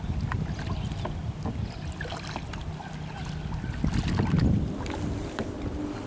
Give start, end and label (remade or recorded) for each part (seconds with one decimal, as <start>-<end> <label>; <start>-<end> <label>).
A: 0.0-6.1 recorded